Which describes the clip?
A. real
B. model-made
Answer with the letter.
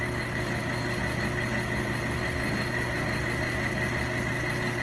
A